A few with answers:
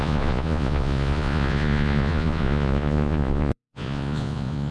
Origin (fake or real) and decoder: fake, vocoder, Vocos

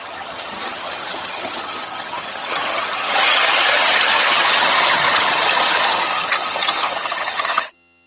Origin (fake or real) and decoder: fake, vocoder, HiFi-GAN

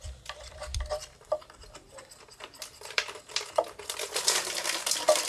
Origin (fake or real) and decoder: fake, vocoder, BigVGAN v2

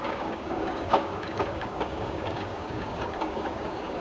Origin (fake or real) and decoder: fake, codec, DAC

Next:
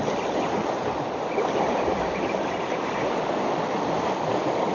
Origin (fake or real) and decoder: real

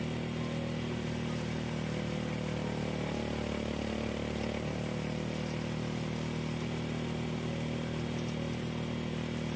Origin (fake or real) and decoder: real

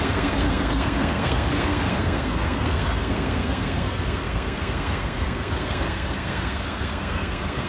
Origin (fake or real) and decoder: fake, codec, SNAC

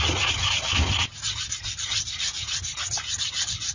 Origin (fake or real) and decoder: real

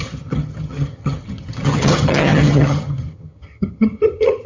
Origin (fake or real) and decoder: fake, vocoder, HiFi-GAN